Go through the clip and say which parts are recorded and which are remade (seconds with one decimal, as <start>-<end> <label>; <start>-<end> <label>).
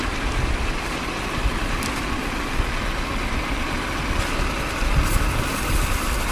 0.0-2.0 remade; 2.0-5.1 recorded; 5.1-6.3 remade